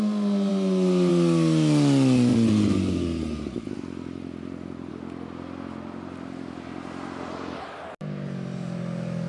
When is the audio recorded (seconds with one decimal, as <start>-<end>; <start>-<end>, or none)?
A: 0.0-9.3